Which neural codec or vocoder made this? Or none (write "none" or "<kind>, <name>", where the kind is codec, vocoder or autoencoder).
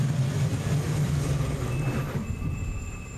none